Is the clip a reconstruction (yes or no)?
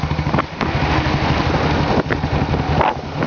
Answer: no